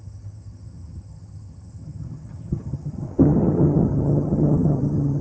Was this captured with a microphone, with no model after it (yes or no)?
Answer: no